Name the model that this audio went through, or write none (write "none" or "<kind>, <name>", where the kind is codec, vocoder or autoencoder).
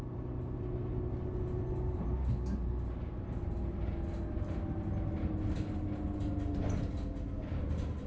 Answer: none